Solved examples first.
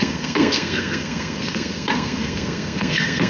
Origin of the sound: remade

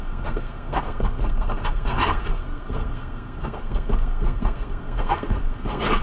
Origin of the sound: remade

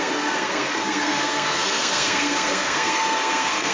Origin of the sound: remade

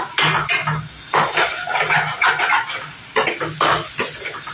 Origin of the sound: recorded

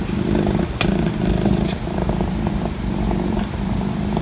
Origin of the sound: recorded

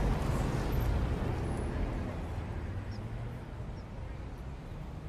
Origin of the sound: recorded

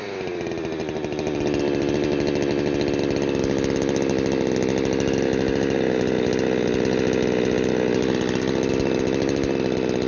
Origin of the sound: recorded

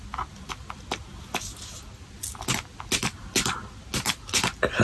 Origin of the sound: recorded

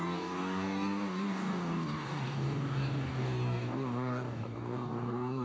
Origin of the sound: remade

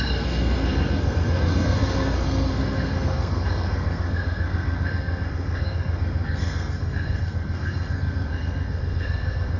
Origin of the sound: remade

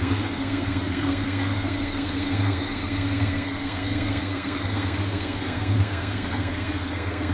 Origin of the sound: remade